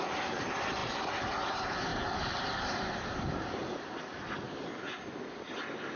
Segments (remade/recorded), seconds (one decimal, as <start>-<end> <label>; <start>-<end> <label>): 0.0-6.0 recorded